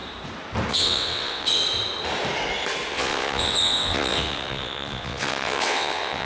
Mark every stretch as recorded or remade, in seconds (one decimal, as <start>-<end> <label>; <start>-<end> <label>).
0.0-0.7 recorded; 0.7-1.6 remade; 1.6-2.9 recorded; 2.9-6.2 remade